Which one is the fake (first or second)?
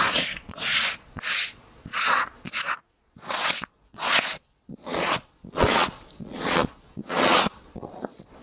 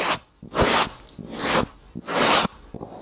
first